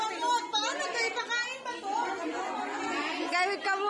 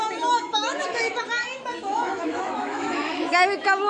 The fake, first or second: second